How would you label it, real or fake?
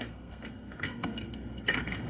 fake